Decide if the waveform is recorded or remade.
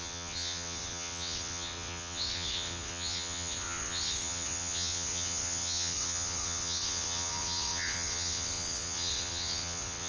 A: remade